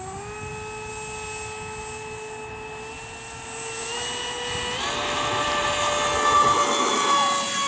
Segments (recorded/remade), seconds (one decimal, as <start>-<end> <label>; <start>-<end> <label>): 0.0-7.7 recorded